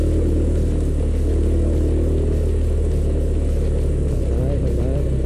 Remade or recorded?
recorded